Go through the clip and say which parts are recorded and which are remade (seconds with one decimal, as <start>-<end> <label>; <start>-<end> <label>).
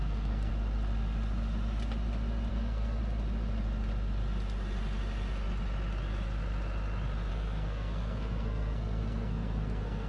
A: 0.0-0.5 remade; 0.5-2.5 recorded; 2.5-3.0 remade; 3.0-7.3 recorded; 7.3-10.1 remade